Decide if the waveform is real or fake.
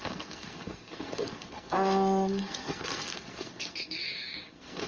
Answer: fake